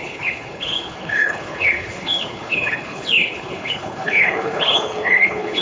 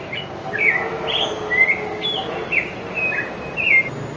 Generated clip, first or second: first